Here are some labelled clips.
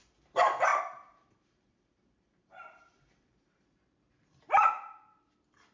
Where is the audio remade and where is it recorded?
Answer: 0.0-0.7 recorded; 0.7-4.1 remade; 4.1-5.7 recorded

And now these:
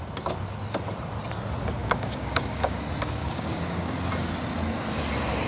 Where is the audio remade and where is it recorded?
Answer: 0.0-1.8 recorded; 1.8-2.8 remade; 2.8-3.2 recorded; 3.2-3.9 remade; 3.9-5.5 recorded